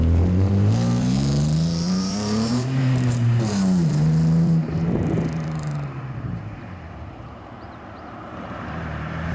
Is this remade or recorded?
remade